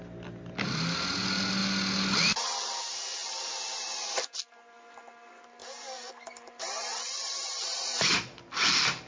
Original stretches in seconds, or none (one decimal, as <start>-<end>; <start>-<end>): 0.0-1.6; 2.8-5.6; 8.1-9.1